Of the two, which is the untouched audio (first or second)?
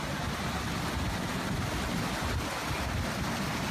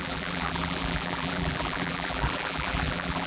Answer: first